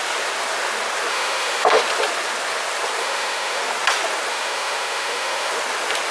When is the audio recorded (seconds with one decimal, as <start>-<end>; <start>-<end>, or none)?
0.0-1.1; 1.8-3.0; 3.6-4.3; 5.5-6.1